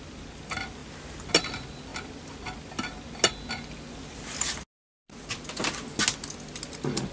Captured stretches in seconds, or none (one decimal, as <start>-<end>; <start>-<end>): 0.0-7.1